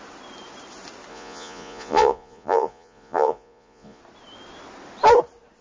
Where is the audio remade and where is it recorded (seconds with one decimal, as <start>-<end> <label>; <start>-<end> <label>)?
0.0-1.1 recorded; 1.1-4.0 remade; 4.0-5.6 recorded